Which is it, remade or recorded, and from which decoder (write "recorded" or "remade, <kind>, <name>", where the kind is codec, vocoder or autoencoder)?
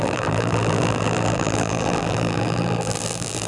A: remade, vocoder, BigVGAN v2